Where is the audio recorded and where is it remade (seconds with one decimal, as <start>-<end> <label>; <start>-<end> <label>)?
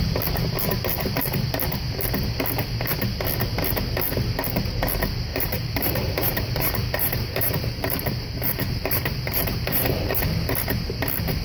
0.0-5.3 recorded; 5.3-10.2 remade; 10.2-11.4 recorded